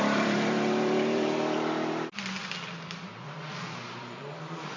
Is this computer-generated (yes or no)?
yes